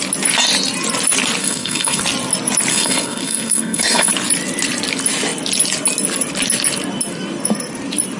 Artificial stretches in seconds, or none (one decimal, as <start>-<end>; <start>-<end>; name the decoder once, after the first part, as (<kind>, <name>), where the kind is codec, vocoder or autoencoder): 1.4-2.0 (codec, SNAC); 2.7-4.1